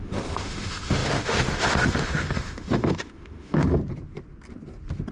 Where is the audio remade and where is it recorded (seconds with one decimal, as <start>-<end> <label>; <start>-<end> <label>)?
0.0-3.8 remade; 3.8-5.1 recorded